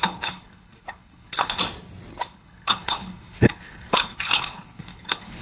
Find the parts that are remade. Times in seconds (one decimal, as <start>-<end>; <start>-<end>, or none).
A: 0.0-1.6; 2.2-5.4